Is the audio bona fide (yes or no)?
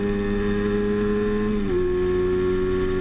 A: yes